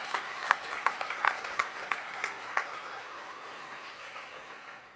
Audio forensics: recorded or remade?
remade